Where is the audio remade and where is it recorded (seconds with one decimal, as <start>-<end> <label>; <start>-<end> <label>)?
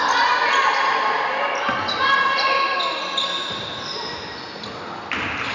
0.0-5.5 recorded